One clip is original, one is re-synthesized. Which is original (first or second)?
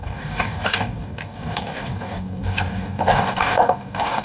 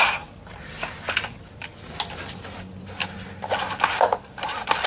second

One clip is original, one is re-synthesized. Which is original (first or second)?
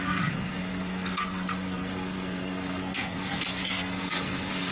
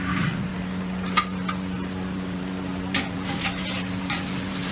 second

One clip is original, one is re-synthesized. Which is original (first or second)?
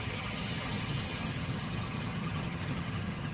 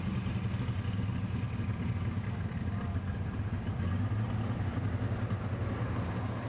second